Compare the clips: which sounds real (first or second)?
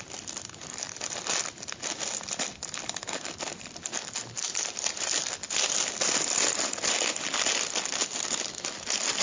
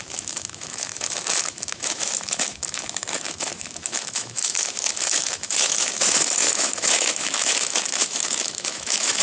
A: first